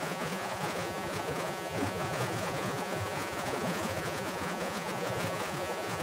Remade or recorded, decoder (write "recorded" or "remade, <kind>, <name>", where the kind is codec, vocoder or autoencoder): remade, vocoder, Vocos